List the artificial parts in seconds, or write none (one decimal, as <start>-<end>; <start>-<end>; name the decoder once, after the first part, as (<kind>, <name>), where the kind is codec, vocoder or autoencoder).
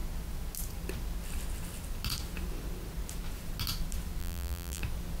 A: 4.2-4.8 (vocoder, BigVGAN v2)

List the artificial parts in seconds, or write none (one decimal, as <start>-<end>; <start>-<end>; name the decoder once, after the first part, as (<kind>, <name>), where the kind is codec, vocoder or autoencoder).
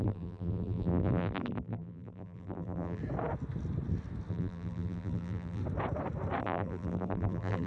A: 0.0-3.0 (vocoder, BigVGAN v2); 4.3-5.6; 6.4-7.7